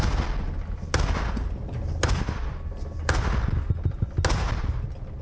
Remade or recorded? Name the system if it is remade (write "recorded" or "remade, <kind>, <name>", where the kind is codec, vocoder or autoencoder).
recorded